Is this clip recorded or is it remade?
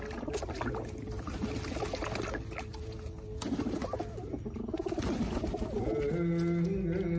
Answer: recorded